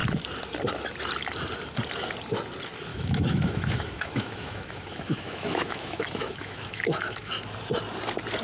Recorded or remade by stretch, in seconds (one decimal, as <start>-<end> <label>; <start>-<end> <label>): 0.0-2.9 recorded; 2.9-7.3 remade; 7.3-8.4 recorded